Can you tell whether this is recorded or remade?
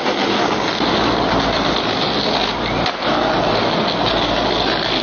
recorded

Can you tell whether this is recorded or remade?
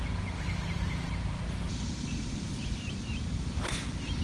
recorded